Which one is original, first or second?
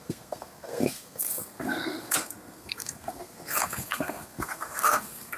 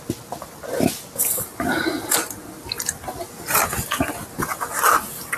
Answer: second